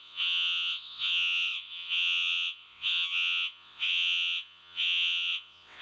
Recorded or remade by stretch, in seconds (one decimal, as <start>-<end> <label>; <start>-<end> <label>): 0.0-5.8 remade

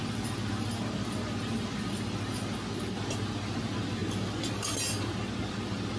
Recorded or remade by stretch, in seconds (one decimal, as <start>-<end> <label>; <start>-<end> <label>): 0.0-6.0 recorded

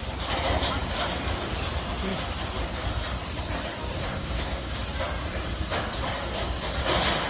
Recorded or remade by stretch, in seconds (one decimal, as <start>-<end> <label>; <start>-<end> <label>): 0.0-4.0 recorded; 4.0-4.7 remade; 4.7-7.3 recorded

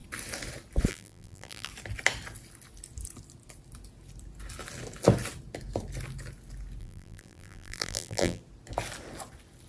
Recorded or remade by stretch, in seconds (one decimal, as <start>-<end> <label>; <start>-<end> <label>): 0.0-0.9 recorded; 0.9-1.7 remade; 1.7-6.8 recorded; 6.8-8.4 remade; 8.4-9.7 recorded

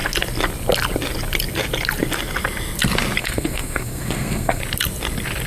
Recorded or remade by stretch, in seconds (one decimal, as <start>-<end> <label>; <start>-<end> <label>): 0.0-3.2 recorded; 3.2-4.6 remade; 4.6-5.5 recorded

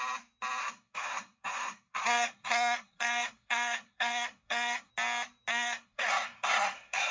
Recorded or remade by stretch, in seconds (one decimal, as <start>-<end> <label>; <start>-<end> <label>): 0.0-0.6 recorded; 0.6-4.9 remade; 4.9-5.5 recorded; 5.5-7.1 remade